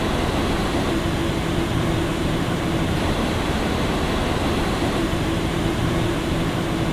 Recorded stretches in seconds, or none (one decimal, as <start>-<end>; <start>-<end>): 0.0-2.1; 6.1-6.9